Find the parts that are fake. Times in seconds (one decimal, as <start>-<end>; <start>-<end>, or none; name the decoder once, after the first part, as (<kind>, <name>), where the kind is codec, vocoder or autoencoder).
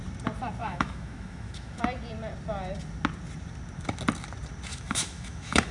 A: 0.6-1.8 (autoencoder, DAC-VAE); 4.7-5.7